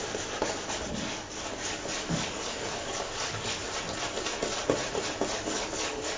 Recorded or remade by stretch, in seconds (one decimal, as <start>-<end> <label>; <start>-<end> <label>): 0.0-3.6 remade; 3.6-5.3 recorded; 5.3-6.2 remade